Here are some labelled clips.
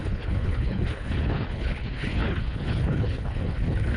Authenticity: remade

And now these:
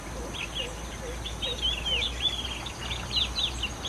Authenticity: recorded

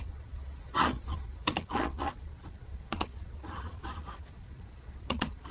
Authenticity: remade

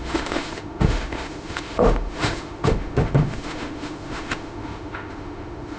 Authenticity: remade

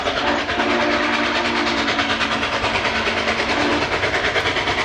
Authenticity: recorded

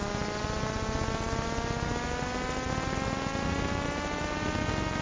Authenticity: recorded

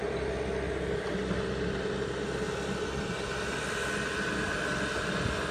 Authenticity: recorded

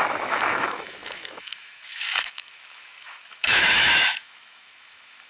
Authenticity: remade